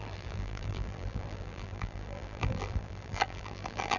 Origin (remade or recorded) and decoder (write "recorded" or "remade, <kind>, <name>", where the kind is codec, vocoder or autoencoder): remade, vocoder, BigVGAN v2